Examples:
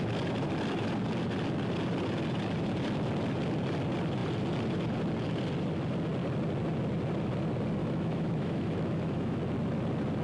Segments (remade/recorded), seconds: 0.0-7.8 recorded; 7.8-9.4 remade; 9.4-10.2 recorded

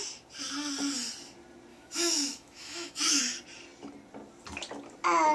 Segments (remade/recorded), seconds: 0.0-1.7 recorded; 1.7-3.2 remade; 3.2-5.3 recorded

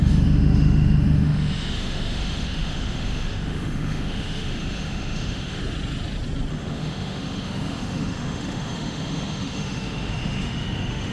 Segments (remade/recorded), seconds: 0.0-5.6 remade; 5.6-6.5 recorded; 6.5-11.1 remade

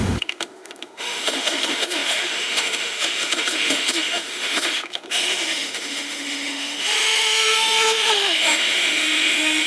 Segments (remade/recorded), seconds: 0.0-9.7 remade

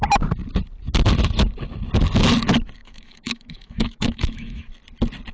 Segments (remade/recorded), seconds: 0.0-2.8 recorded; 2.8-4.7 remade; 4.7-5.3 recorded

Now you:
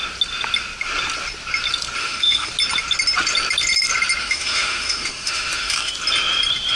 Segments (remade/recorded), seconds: 0.0-2.0 recorded; 2.0-2.5 remade; 2.5-4.2 recorded; 4.2-5.9 remade; 5.9-6.8 recorded

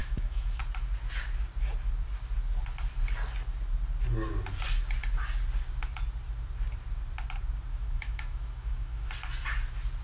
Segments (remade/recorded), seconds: 0.0-0.6 remade; 0.6-7.7 recorded; 7.7-9.1 remade; 9.1-10.0 recorded

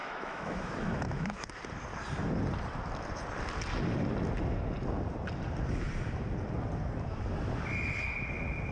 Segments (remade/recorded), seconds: 0.0-1.5 remade; 1.5-8.7 recorded